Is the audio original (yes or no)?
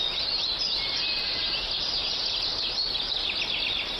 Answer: yes